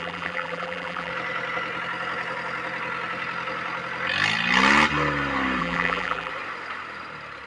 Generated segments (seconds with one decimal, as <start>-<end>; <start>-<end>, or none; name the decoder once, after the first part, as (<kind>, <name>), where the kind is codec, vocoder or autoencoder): 0.0-1.1 (vocoder, BigVGAN v2); 5.6-6.3